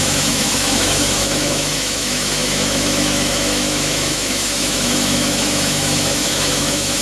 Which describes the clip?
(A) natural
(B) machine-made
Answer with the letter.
B